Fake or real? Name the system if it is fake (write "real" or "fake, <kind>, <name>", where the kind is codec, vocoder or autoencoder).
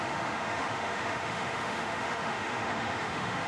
fake, autoencoder, DAC-VAE